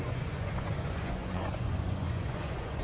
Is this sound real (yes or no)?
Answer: no